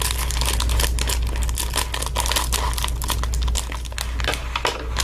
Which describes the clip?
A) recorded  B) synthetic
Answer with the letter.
A